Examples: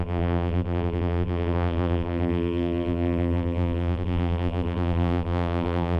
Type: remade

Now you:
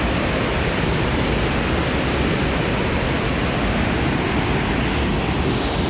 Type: recorded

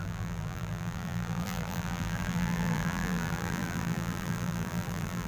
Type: remade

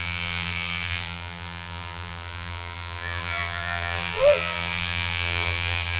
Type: remade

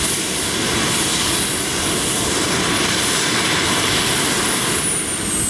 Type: recorded